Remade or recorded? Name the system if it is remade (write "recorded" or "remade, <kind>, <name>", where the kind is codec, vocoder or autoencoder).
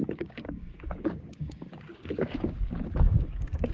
remade, codec, DAC